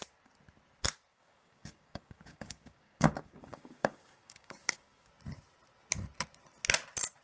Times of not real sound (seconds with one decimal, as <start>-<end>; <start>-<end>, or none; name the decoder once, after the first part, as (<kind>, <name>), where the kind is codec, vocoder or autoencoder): 1.1-5.1 (codec, DAC)